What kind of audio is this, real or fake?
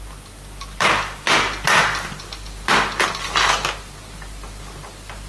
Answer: real